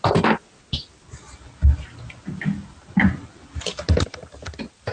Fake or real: real